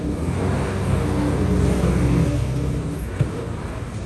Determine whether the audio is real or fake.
fake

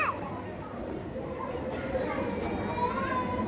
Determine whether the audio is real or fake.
real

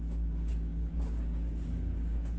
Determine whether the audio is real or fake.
fake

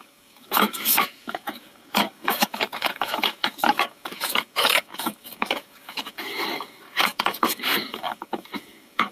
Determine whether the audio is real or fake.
fake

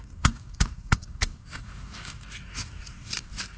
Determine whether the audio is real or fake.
fake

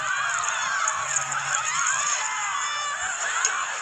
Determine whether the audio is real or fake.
real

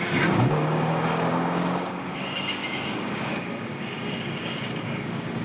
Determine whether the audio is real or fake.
fake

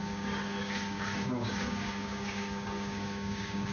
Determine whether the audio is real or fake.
fake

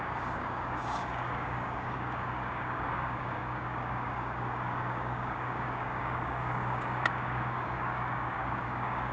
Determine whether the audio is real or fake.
fake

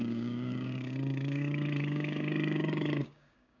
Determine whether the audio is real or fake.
fake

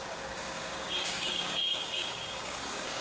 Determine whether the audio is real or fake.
fake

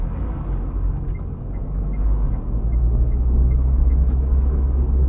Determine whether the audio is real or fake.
fake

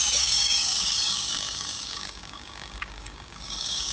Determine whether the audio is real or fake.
fake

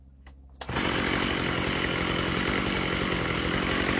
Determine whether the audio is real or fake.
real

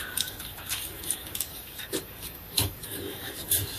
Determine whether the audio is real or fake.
fake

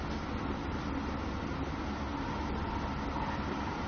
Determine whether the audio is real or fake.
real